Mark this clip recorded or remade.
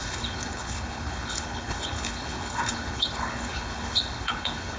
remade